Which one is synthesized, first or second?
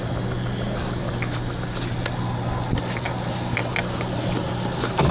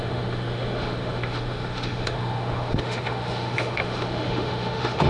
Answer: second